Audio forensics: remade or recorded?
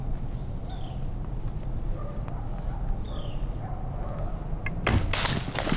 recorded